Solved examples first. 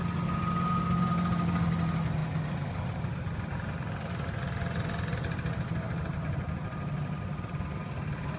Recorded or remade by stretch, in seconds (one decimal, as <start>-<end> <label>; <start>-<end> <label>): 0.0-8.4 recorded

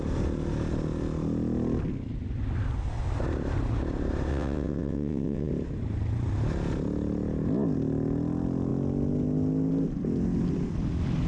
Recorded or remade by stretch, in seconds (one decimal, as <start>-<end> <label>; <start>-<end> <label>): 0.0-4.3 recorded; 4.3-5.5 remade; 5.5-11.3 recorded

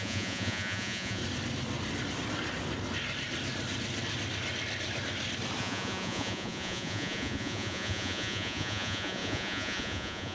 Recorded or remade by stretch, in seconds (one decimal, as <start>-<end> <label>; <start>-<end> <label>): 0.0-1.2 remade; 1.2-5.6 recorded; 5.6-10.3 remade

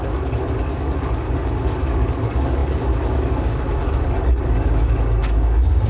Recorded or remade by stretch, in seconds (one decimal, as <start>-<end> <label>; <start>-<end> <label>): 0.0-5.9 remade

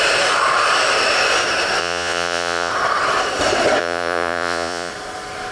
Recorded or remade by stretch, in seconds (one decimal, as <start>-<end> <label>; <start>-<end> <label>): 0.0-1.8 recorded; 1.8-2.7 remade; 2.7-3.8 recorded; 3.8-4.9 remade; 4.9-5.5 recorded